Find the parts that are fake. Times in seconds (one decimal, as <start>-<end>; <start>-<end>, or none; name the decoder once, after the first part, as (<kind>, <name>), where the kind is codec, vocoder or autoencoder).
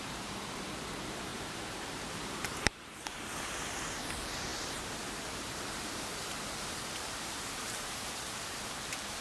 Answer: 0.0-9.2 (vocoder, BigVGAN v2)